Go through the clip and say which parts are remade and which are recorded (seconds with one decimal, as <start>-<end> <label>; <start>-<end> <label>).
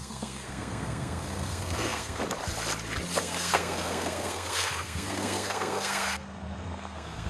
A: 0.0-2.2 remade; 2.2-3.2 recorded; 3.2-7.3 remade